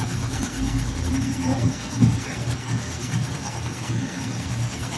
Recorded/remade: remade